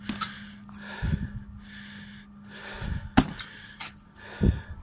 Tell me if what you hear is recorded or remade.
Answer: recorded